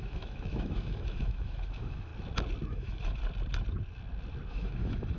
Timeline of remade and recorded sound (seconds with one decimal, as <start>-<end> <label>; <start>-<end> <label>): 0.0-2.1 remade; 2.1-2.7 recorded; 2.7-3.2 remade; 3.2-4.5 recorded; 4.5-5.2 remade

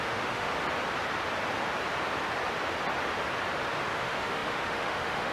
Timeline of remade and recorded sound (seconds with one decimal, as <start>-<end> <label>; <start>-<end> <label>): 0.0-0.5 remade; 0.5-3.7 recorded; 3.7-5.3 remade

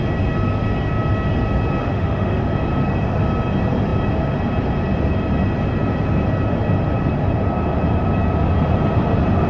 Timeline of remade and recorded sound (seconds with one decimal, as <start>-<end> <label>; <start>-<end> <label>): 0.0-1.8 recorded; 1.8-2.5 remade; 2.5-9.5 recorded